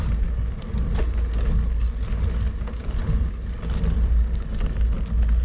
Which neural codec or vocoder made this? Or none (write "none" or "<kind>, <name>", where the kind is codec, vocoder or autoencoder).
none